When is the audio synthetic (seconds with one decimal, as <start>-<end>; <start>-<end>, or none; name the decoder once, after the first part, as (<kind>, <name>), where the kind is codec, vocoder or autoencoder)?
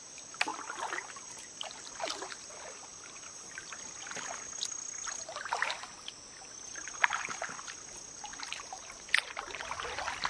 8.3-9.0 (vocoder, BigVGAN v2)